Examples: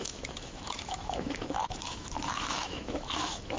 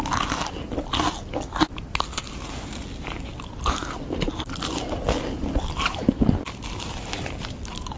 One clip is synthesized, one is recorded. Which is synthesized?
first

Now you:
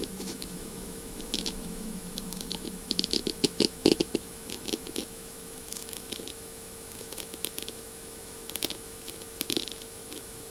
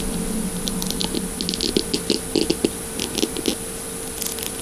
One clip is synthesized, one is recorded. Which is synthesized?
first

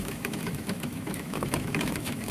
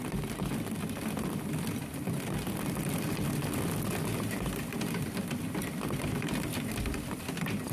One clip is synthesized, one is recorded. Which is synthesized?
first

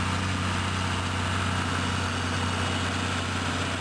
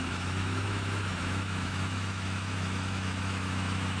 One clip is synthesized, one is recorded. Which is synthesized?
second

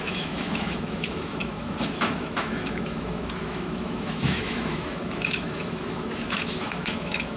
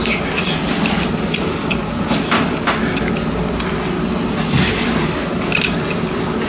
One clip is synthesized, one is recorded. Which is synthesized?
first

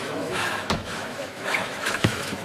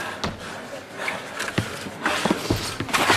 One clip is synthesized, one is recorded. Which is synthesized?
first